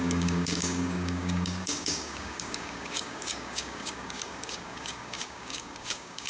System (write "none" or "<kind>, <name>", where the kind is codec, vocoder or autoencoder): codec, DAC